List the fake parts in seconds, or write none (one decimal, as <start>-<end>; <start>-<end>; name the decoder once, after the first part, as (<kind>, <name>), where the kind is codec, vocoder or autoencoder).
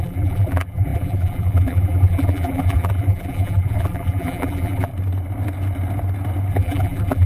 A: 0.0-4.9 (vocoder, BigVGAN v2); 6.5-7.3